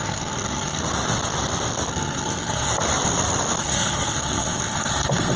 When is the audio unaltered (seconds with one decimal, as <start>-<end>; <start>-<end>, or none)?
0.8-1.9; 2.7-3.6